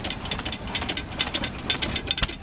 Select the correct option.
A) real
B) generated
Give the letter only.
A